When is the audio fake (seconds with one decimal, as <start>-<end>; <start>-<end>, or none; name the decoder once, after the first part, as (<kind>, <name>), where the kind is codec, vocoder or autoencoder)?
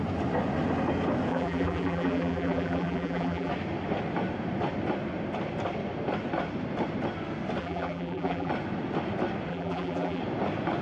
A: 1.3-3.5 (vocoder, BigVGAN v2); 7.6-8.5; 9.5-10.2